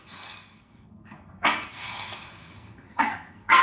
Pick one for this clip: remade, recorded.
remade